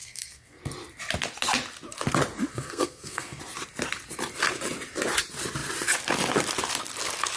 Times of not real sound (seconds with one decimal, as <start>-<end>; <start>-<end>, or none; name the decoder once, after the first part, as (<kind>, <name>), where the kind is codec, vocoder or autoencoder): 0.0-0.6 (codec, SNAC); 2.5-3.4